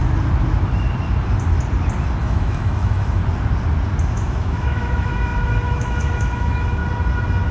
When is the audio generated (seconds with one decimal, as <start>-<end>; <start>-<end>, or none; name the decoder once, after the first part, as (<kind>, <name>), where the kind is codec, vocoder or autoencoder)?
2.2-3.2 (autoencoder, DAC-VAE); 4.0-6.8